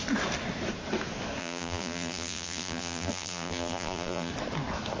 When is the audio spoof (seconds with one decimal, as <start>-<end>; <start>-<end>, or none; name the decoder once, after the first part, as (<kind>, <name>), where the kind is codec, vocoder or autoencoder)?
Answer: 1.4-4.3 (vocoder, BigVGAN v2)